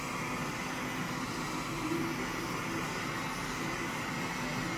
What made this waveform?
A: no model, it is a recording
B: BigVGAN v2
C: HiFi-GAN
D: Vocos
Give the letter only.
A